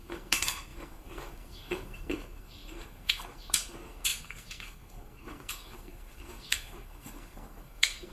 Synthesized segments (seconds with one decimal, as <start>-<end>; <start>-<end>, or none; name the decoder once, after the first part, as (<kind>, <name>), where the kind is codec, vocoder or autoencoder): 0.0-8.1 (codec, SNAC)